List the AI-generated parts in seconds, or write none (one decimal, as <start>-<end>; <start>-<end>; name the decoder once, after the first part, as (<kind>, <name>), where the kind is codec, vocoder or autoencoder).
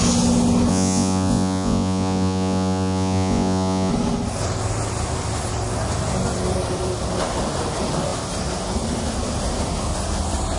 0.7-3.9 (vocoder, Vocos)